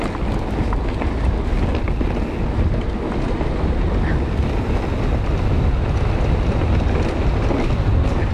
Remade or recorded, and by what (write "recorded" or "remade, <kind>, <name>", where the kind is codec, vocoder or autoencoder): recorded